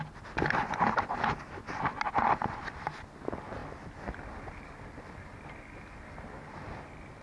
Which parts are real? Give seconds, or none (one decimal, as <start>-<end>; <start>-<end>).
0.0-7.2